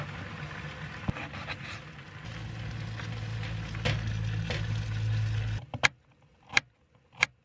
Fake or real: real